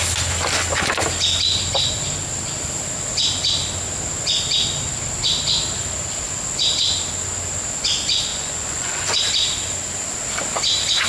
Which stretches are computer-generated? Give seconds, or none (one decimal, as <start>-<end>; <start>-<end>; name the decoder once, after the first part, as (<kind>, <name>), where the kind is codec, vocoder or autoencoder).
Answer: 8.3-9.2 (vocoder, Vocos)

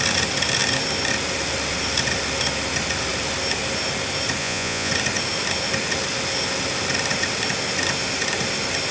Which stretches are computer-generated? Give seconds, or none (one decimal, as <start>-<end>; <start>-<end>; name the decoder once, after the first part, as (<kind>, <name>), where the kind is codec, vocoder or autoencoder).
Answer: 4.4-4.9 (vocoder, Vocos)